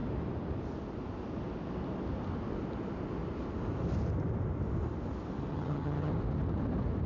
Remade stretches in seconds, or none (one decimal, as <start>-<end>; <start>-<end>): 5.5-6.1